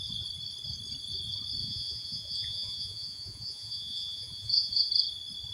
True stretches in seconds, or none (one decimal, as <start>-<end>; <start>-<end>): 0.0-1.6; 4.9-5.5